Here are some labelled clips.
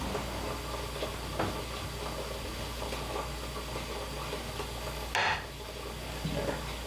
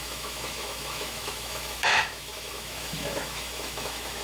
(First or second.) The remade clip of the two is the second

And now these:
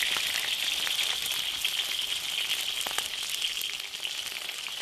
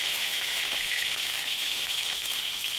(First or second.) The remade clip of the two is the second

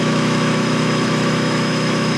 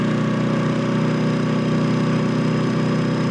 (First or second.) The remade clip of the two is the first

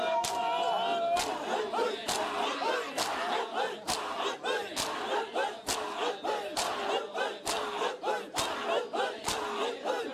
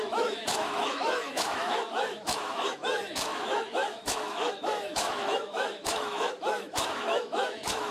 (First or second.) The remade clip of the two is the second